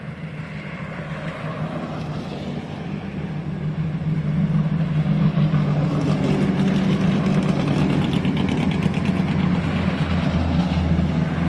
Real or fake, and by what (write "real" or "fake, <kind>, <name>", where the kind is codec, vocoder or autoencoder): real